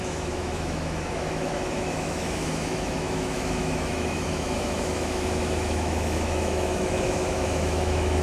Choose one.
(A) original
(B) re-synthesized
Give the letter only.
B